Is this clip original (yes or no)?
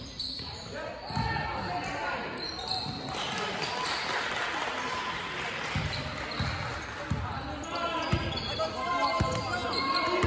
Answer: yes